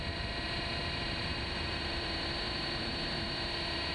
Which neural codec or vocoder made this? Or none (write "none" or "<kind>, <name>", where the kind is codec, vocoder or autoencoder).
vocoder, BigVGAN v2